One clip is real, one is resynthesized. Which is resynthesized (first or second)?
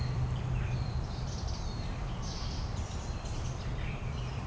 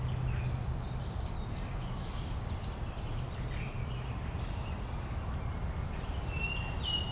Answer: first